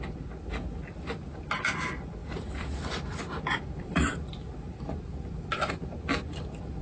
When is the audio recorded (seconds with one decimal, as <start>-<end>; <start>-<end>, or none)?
0.0-2.2; 5.7-6.8